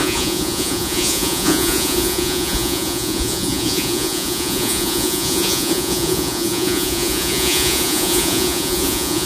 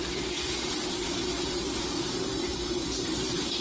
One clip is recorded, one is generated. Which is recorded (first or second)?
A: second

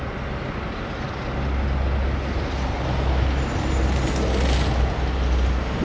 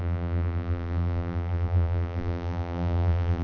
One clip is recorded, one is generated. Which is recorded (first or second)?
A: first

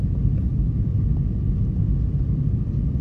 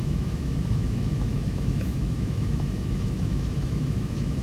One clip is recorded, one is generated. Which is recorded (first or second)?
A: first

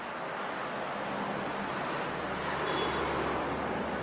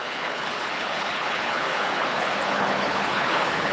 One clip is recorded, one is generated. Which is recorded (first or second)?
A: first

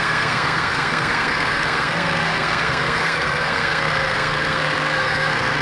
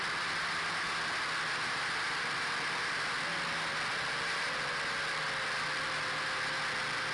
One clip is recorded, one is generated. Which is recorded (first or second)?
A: second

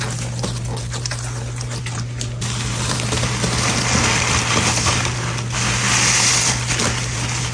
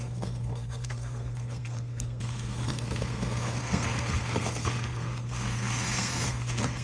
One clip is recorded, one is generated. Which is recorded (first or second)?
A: first